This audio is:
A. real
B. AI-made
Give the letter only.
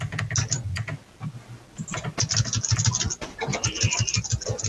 A